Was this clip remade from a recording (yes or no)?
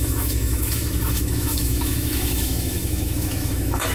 yes